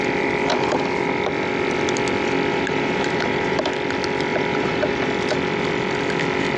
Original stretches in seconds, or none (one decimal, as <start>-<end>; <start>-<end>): 0.0-2.5; 3.6-4.3; 5.1-6.6